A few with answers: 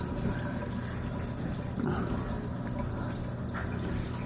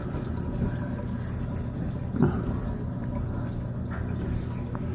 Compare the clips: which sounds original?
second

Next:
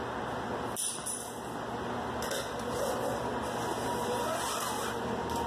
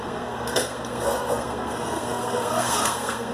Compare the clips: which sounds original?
first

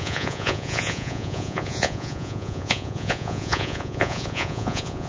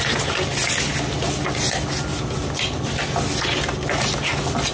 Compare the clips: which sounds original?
second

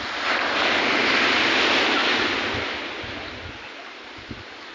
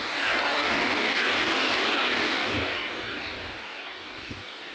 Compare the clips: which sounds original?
first